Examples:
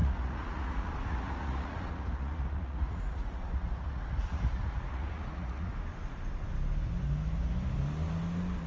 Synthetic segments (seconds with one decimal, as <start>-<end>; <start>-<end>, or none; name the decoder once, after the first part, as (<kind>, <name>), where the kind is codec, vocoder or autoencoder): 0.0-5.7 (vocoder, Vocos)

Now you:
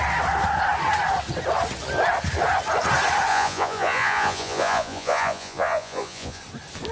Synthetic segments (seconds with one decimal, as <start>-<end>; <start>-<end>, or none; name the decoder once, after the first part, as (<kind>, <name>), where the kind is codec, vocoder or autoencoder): 3.3-6.4 (vocoder, Vocos)

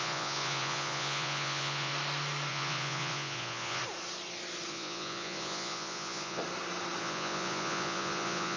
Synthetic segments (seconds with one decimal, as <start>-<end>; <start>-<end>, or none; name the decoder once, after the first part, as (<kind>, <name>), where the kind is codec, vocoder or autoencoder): 0.0-1.9 (vocoder, Vocos); 2.5-3.8; 4.7-6.4; 7.0-8.6

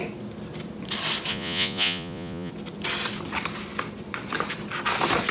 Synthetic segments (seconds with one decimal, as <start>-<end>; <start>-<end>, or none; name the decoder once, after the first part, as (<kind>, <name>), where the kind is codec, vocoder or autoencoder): 1.3-2.5 (vocoder, Vocos)

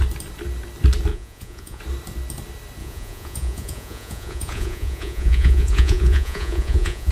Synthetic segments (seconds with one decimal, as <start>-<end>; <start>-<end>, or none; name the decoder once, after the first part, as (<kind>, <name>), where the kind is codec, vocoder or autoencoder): 1.1-1.8 (vocoder, Vocos); 2.8-7.1

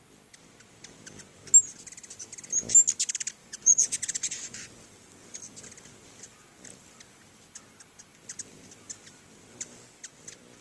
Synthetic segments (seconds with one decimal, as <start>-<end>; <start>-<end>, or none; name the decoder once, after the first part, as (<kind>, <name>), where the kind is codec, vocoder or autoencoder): 3.4-4.7 (vocoder, Vocos)